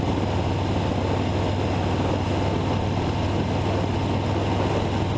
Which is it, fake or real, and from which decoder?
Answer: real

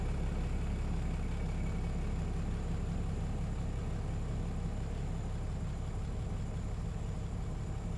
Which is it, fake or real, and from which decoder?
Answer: real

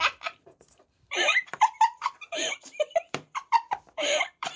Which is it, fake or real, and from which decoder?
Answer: fake, vocoder, BigVGAN v2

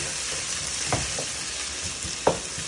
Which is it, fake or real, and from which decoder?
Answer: real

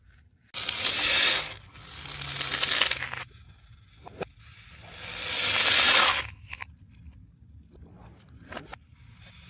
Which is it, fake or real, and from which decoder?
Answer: real